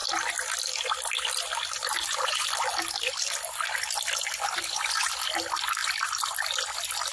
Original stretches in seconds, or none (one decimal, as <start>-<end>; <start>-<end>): 0.0-7.1

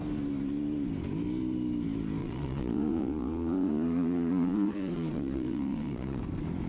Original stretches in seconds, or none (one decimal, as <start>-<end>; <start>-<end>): 0.0-2.2; 6.2-6.7

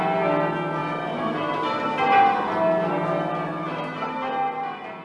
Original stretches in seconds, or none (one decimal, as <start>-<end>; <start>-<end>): 0.0-5.0